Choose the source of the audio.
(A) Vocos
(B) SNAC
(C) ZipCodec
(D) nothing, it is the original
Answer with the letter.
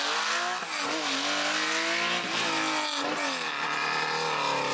D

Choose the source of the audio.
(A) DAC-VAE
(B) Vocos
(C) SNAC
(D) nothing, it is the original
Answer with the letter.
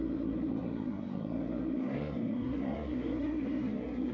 C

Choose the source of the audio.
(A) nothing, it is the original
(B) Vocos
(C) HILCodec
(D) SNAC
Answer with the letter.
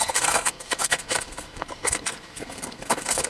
D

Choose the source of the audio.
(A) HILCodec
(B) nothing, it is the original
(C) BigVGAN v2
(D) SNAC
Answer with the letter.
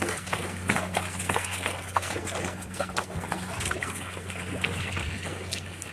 D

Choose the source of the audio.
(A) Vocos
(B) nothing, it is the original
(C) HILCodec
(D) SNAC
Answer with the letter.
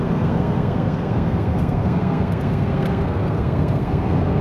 D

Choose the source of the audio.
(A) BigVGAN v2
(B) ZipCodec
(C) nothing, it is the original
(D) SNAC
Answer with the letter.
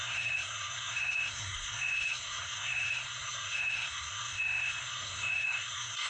D